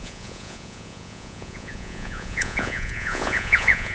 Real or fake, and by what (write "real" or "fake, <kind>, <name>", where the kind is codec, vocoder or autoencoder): fake, vocoder, Vocos